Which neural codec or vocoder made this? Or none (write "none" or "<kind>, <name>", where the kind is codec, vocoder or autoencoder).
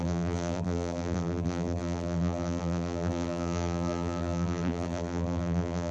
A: vocoder, BigVGAN v2